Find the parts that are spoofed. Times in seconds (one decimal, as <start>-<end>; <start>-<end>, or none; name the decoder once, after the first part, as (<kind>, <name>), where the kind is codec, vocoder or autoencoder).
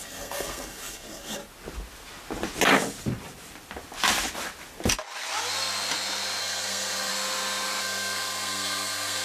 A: 0.0-1.4 (codec, SNAC); 6.4-7.1; 7.8-9.2